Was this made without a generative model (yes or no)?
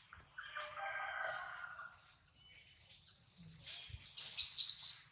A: yes